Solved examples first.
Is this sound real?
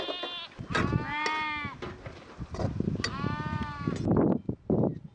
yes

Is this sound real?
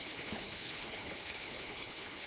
no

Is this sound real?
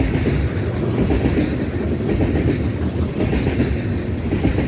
yes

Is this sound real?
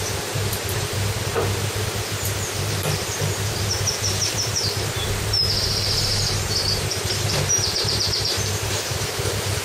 no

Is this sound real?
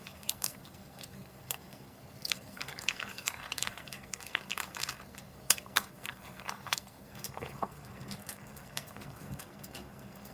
no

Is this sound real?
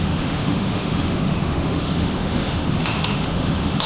no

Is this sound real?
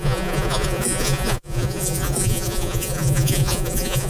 no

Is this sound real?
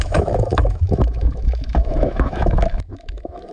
no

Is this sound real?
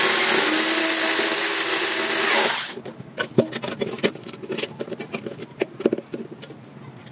yes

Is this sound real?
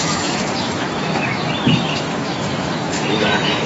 no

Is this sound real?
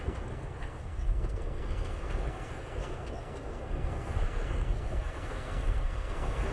no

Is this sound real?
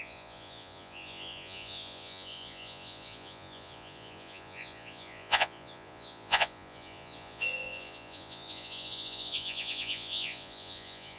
no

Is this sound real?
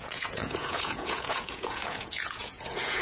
no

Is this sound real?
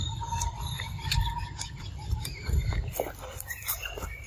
no